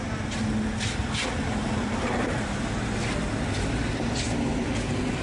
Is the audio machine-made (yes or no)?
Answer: no